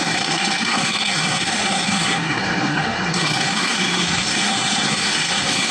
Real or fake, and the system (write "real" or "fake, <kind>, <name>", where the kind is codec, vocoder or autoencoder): fake, codec, SNAC